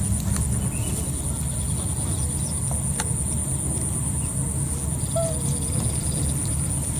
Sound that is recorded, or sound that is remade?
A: recorded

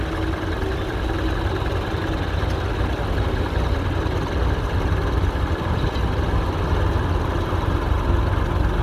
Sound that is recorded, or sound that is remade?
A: recorded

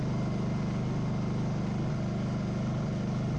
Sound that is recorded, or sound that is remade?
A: recorded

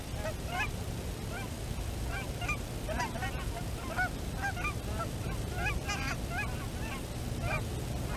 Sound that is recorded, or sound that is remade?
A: recorded